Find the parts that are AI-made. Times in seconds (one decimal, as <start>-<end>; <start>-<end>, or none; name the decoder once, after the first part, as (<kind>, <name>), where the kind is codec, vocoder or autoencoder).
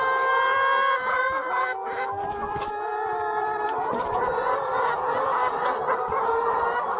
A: 0.0-1.4 (vocoder, BigVGAN v2); 2.3-5.4; 6.1-7.0